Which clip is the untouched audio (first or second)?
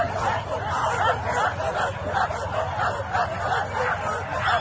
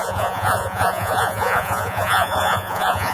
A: first